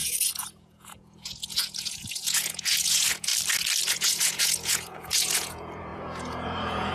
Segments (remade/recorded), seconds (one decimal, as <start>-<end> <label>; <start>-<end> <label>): 0.0-3.3 remade; 3.3-3.9 recorded; 3.9-6.9 remade